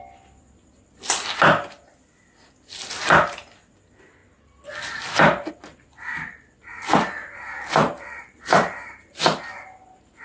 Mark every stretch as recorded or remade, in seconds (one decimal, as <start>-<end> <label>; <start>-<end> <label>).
0.0-7.8 recorded; 7.8-9.2 remade; 9.2-10.2 recorded